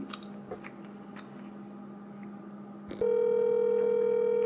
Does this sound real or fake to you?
real